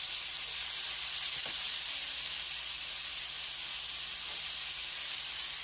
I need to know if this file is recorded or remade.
recorded